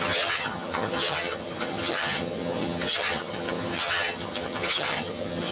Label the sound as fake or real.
fake